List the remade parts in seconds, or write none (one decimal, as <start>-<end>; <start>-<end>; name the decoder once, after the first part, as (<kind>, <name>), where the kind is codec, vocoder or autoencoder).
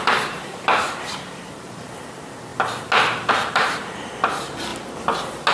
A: 0.0-2.5 (vocoder, BigVGAN v2); 3.3-4.7